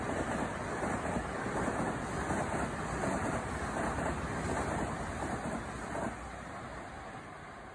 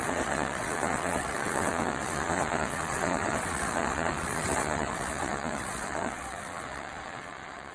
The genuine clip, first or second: first